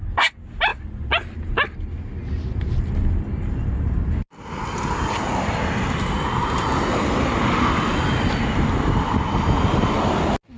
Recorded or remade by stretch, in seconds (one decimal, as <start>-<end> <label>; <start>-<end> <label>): 0.0-10.6 recorded